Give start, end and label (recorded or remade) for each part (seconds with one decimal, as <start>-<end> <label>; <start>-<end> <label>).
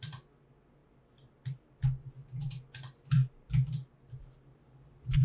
0.0-5.2 recorded